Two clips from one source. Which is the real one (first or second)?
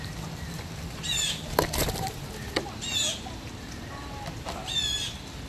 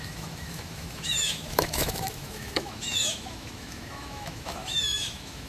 first